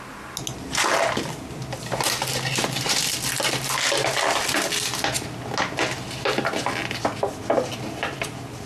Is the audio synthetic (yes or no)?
no